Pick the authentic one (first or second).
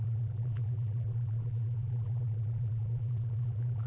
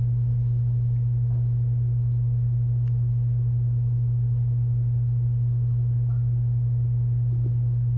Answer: second